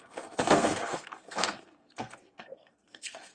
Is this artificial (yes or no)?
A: yes